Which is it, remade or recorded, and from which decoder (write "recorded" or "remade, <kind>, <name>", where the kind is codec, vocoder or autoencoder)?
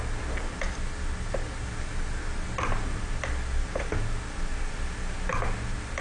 recorded